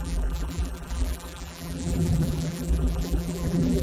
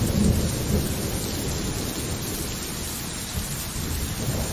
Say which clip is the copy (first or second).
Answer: first